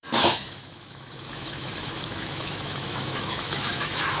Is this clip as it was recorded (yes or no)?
no